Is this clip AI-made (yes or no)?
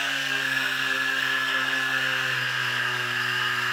yes